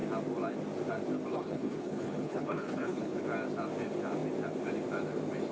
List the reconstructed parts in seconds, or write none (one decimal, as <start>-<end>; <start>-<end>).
1.3-3.2